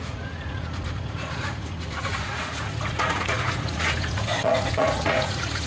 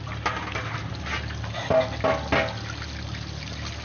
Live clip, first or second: second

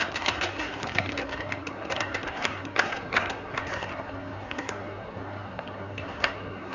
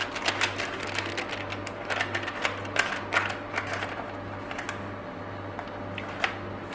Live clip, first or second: second